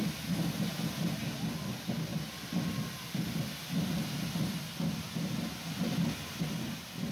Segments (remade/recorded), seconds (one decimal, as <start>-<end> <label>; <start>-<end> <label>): 0.0-7.1 recorded